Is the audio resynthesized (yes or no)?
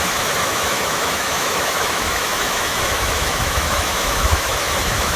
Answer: yes